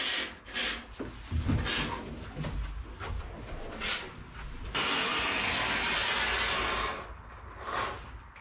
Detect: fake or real real